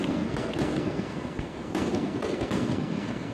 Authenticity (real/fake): fake